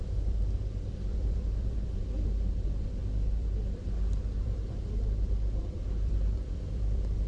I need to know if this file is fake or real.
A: fake